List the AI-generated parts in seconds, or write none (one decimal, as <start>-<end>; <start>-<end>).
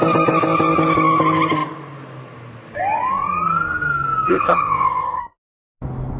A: 4.3-5.2